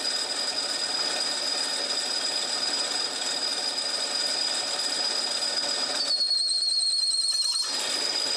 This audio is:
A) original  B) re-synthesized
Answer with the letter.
A